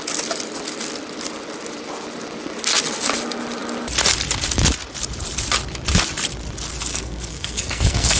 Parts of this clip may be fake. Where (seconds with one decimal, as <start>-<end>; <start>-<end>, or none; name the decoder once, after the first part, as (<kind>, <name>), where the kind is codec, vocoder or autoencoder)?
6.9-8.2 (codec, SNAC)